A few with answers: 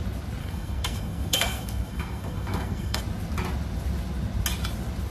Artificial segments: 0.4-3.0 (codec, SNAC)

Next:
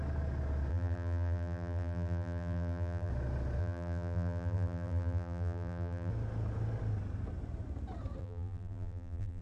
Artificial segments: 0.7-3.1 (vocoder, BigVGAN v2); 3.6-6.1; 8.2-9.4

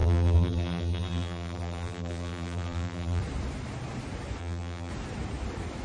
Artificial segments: 0.0-3.2 (vocoder, BigVGAN v2); 4.4-4.9

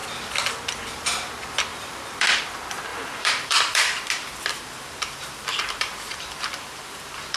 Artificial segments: 1.7-2.4 (vocoder, BigVGAN v2); 2.9-7.4

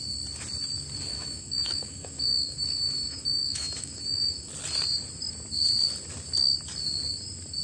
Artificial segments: 1.1-4.5 (autoencoder, DAC-VAE)

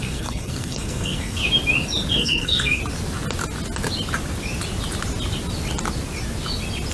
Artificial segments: 0.0-1.4 (codec, SNAC); 2.1-2.8